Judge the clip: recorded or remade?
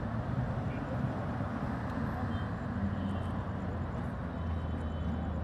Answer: recorded